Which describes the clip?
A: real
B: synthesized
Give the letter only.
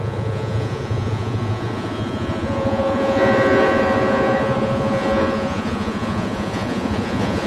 B